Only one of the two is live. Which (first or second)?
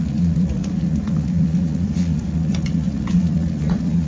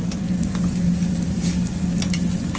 second